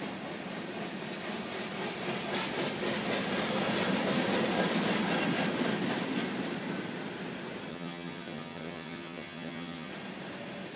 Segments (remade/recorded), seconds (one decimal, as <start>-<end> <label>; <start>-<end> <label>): 0.0-7.7 recorded; 7.7-9.9 remade; 9.9-10.8 recorded